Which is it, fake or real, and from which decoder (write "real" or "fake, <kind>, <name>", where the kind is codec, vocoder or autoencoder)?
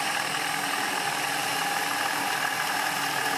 real